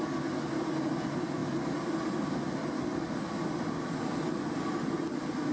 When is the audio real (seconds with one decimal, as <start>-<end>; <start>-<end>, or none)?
0.0-5.5